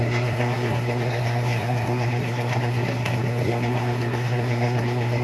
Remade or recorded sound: remade